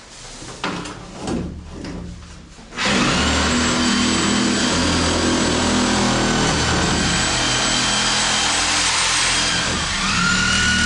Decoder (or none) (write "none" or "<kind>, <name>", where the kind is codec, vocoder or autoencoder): none